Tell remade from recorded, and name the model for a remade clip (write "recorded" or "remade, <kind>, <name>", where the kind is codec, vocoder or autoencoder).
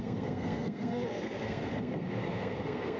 remade, codec, SNAC